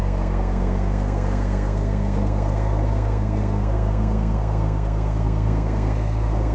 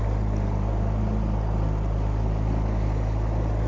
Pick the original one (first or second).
second